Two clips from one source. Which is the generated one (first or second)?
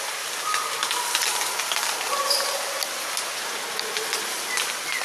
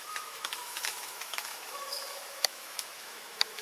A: second